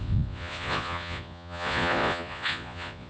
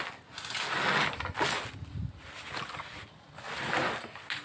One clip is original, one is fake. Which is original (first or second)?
second